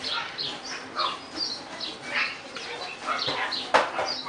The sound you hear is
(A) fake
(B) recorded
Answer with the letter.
B